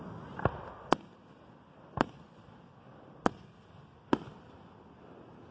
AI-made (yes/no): no